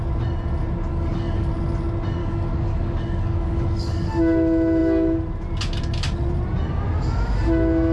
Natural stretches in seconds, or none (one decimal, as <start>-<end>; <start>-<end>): 0.0-0.9; 1.5-2.2; 4.1-7.9